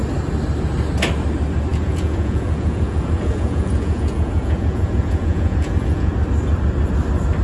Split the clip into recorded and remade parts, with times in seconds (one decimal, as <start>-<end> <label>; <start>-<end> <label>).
0.0-1.7 recorded; 1.7-6.1 remade; 6.1-7.4 recorded